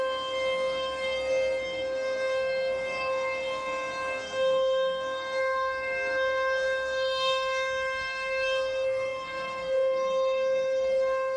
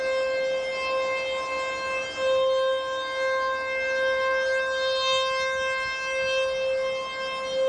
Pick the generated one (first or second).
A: first